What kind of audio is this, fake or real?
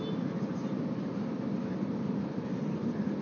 real